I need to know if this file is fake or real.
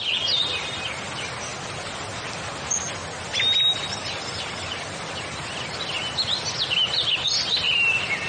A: real